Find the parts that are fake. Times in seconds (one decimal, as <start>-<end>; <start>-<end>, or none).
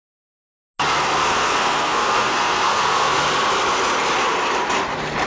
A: 1.2-3.2